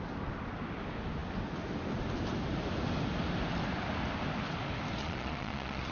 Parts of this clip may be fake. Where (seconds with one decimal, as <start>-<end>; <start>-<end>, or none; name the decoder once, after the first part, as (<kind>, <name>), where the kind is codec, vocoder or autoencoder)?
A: 5.0-5.9 (vocoder, Vocos)